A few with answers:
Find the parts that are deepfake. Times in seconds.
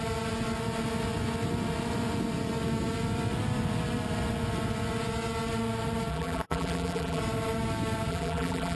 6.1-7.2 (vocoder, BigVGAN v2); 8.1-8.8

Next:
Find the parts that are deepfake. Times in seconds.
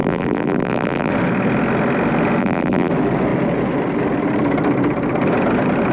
0.0-1.1 (vocoder, BigVGAN v2); 2.4-2.9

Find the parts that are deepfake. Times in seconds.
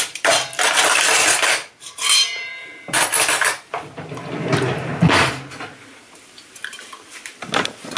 0.0-4.9 (vocoder, BigVGAN v2)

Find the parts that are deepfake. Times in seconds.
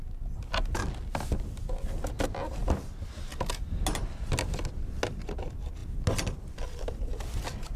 none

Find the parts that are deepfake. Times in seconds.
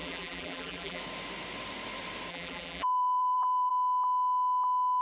0.0-1.0 (vocoder, BigVGAN v2); 2.3-3.7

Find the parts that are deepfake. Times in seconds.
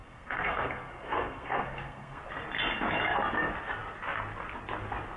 0.0-2.2 (codec, SNAC)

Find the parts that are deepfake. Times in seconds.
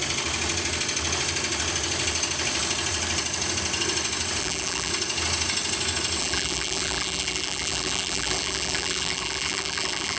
4.4-4.9 (vocoder, BigVGAN v2); 6.2-10.2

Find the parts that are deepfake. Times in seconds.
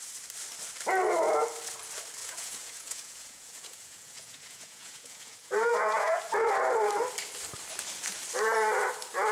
2.2-6.2 (vocoder, Vocos)